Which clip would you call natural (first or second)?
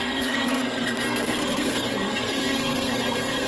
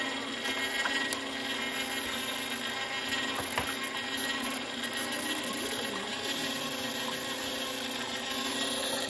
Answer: second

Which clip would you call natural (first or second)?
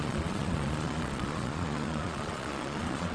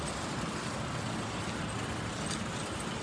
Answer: second